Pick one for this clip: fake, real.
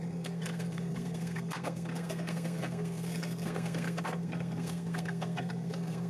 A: fake